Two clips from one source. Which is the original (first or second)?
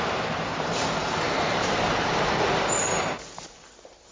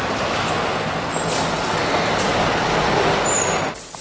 second